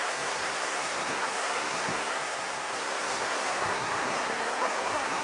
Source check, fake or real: fake